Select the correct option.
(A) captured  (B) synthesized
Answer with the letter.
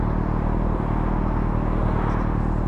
A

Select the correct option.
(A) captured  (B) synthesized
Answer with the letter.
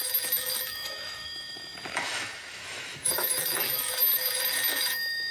B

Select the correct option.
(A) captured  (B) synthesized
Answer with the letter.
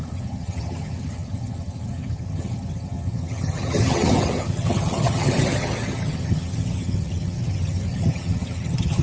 B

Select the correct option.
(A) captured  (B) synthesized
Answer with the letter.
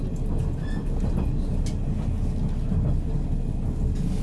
A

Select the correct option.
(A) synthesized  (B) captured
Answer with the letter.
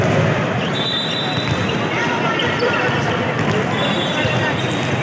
B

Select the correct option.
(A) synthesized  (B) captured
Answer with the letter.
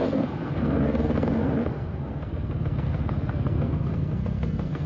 A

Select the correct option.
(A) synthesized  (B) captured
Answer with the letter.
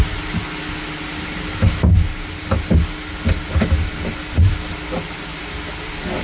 B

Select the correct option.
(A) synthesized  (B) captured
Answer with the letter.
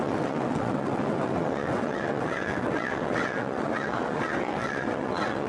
A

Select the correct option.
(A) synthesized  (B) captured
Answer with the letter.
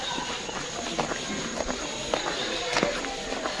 B